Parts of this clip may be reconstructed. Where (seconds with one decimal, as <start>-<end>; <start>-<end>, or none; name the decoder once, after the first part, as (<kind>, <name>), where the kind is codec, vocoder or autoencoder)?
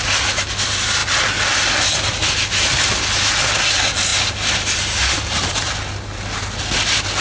none